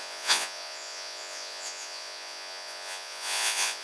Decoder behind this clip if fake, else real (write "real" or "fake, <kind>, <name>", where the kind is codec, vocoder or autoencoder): fake, vocoder, Vocos